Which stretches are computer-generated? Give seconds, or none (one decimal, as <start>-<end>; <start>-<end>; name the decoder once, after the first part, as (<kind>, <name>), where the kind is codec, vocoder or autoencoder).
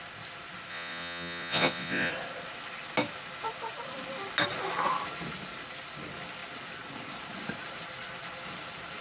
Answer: 0.7-2.1 (vocoder, Vocos)